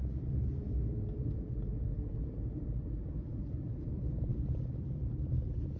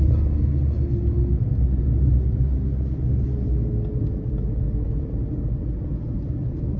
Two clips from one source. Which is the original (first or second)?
second